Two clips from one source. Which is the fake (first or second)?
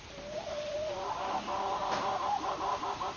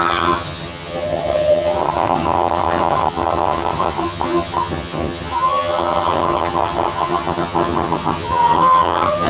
second